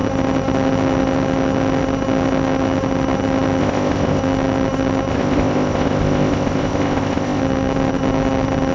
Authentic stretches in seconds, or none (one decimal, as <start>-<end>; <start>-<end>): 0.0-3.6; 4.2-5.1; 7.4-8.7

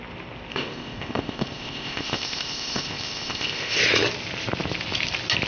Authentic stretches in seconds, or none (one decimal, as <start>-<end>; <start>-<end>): 0.0-0.5; 3.8-5.5

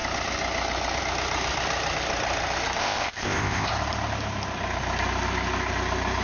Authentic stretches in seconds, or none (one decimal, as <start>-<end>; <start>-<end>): 0.0-2.8; 3.7-6.2

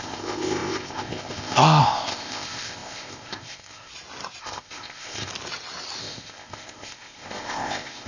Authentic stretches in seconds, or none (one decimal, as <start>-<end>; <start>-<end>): 3.9-4.4; 5.3-6.0